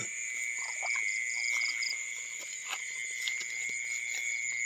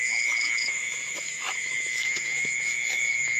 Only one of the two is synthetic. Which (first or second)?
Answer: second